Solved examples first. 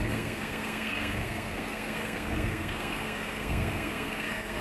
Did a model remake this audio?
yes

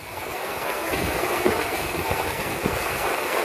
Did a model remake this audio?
yes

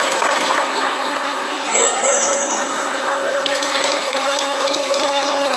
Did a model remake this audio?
yes